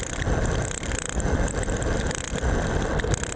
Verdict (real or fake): real